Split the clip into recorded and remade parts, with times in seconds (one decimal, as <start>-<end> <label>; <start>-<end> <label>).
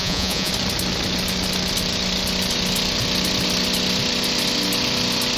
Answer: 0.0-0.5 remade; 0.5-5.4 recorded